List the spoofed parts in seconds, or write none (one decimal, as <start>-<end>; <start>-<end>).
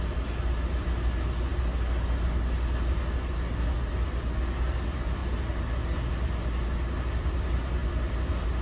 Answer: none